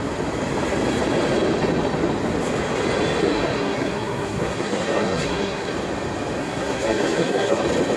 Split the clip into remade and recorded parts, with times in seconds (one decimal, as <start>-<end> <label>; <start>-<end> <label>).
0.0-3.2 recorded; 3.2-5.7 remade; 5.7-6.4 recorded; 6.4-7.6 remade; 7.6-8.0 recorded